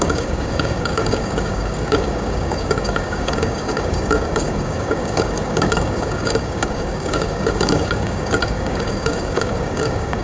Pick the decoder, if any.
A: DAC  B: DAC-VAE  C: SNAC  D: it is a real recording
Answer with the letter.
A